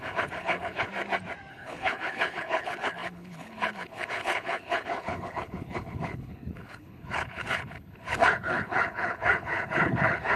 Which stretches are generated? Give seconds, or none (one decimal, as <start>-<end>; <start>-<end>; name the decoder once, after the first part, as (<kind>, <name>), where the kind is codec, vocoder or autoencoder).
0.0-0.9 (codec, HILCodec); 1.5-10.4